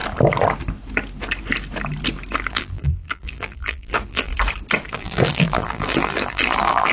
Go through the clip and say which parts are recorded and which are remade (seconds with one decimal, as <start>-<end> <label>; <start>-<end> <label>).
0.0-2.5 recorded; 2.5-4.3 remade; 4.3-4.9 recorded; 4.9-6.9 remade